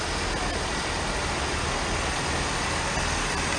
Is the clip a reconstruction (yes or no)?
no